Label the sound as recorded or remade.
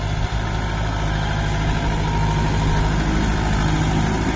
recorded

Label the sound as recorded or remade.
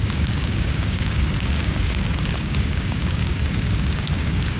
remade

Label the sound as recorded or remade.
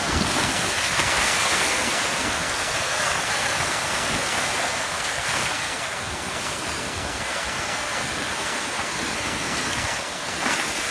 remade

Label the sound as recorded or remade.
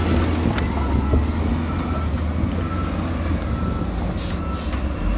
recorded